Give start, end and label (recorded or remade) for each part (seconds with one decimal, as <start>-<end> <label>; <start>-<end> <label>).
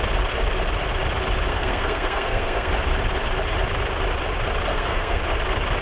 0.0-1.5 recorded; 1.5-2.7 remade; 2.7-4.7 recorded; 4.7-5.2 remade; 5.2-5.8 recorded